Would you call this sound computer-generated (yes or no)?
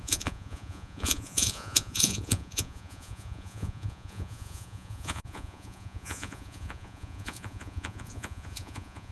yes